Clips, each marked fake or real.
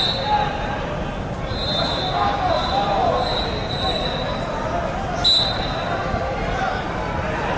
real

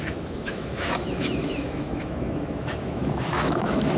fake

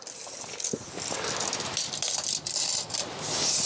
real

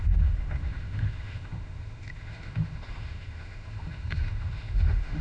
fake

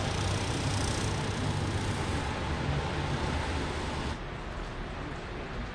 real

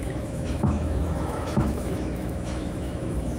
fake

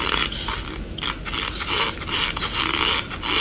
real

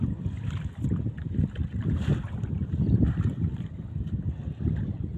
real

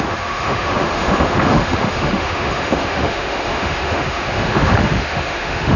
fake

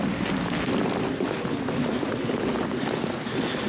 real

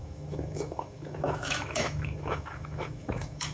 fake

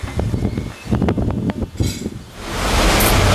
real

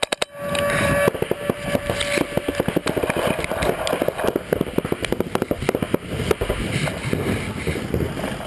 real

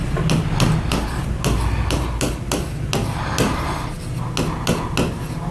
real